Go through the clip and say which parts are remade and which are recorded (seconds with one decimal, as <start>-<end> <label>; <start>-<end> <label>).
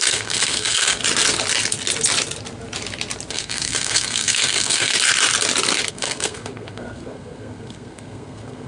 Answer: 0.0-1.0 remade; 1.0-3.3 recorded; 3.3-4.9 remade; 4.9-5.9 recorded; 5.9-8.7 remade